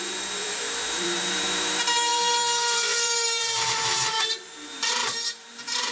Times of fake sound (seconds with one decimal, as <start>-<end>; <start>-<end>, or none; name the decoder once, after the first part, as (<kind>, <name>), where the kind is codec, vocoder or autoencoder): 0.0-5.9 (vocoder, BigVGAN v2)